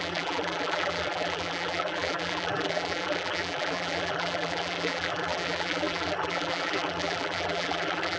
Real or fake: fake